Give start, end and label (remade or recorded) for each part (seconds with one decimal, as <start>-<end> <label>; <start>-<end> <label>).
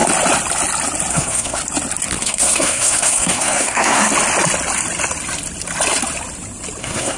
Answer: 0.0-1.1 recorded; 1.1-1.6 remade; 1.6-2.2 recorded; 2.2-4.1 remade; 4.1-6.8 recorded; 6.8-7.2 remade